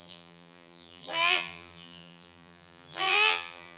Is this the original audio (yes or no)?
no